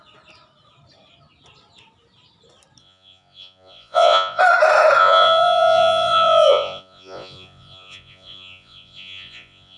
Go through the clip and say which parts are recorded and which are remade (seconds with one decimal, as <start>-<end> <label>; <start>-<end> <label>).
0.0-2.8 recorded; 2.8-4.4 remade; 4.4-5.0 recorded; 5.0-9.8 remade